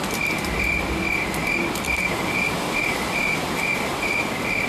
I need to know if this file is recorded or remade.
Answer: recorded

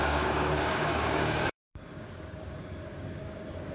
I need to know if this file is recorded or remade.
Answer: remade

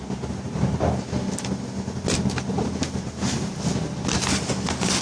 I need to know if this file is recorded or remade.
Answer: recorded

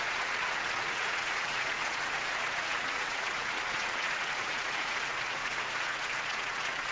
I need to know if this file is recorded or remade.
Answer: remade